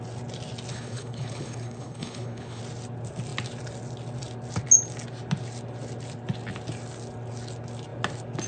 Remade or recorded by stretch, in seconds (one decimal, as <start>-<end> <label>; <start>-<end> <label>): 0.0-0.7 recorded; 0.7-2.6 remade; 2.6-8.5 recorded